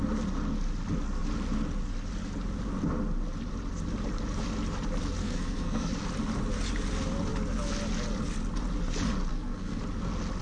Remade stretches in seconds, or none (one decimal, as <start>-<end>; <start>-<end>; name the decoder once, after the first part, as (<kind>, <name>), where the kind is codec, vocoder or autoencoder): 5.2-5.9 (codec, SNAC); 9.3-9.8